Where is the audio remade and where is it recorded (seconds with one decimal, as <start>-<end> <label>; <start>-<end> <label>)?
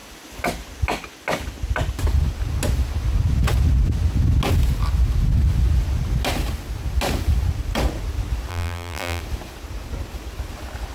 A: 0.0-8.5 recorded; 8.5-9.2 remade; 9.2-10.9 recorded